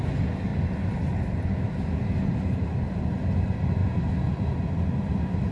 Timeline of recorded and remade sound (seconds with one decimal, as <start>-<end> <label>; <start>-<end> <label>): 0.0-3.8 recorded; 3.8-4.4 remade; 4.4-5.5 recorded